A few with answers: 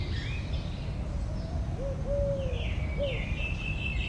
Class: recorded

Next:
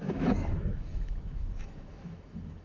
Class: remade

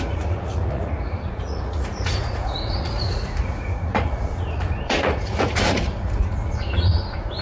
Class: remade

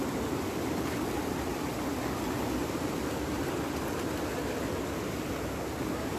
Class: recorded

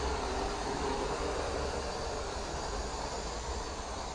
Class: recorded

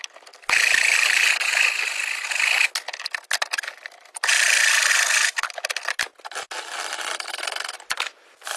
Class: recorded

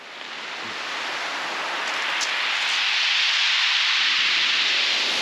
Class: recorded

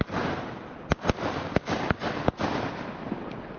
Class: recorded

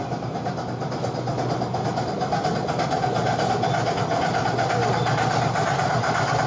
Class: recorded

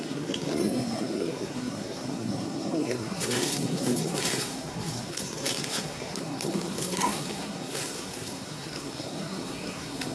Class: remade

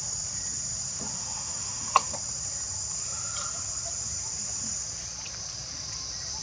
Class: remade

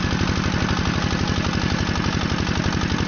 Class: recorded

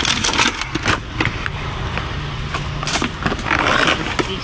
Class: recorded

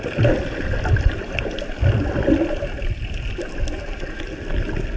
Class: recorded